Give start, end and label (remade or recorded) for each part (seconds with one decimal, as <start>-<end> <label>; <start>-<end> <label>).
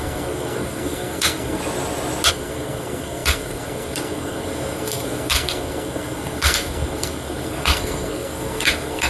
0.0-1.6 remade; 1.6-2.3 recorded; 2.3-9.1 remade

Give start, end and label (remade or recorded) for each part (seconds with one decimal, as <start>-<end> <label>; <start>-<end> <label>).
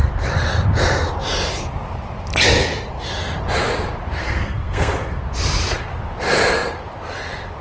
0.0-4.2 recorded; 4.2-5.2 remade; 5.2-7.6 recorded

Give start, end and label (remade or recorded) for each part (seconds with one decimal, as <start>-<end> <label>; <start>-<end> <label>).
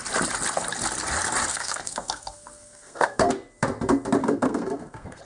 0.0-1.5 recorded; 1.5-3.3 remade; 3.3-4.2 recorded; 4.2-5.2 remade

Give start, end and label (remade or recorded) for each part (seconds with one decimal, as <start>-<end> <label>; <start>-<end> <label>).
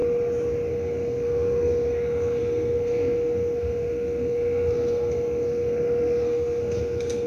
0.0-0.7 recorded; 0.7-7.3 remade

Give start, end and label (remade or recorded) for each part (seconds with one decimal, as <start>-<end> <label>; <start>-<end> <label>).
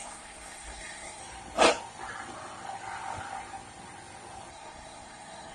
0.0-1.2 remade; 1.2-4.5 recorded; 4.5-5.5 remade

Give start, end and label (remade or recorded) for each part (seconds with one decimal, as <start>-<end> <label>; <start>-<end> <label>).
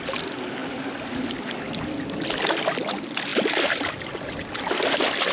0.0-5.3 recorded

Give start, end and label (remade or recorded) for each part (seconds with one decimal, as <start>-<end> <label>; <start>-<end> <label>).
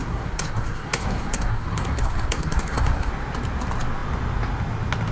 0.0-3.1 remade; 3.1-5.1 recorded